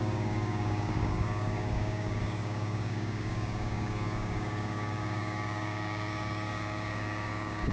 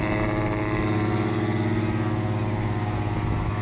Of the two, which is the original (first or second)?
second